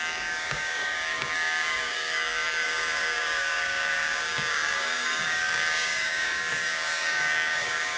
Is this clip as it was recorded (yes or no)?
no